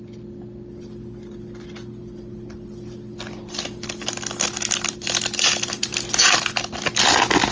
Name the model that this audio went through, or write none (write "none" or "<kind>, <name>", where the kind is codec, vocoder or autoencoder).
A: none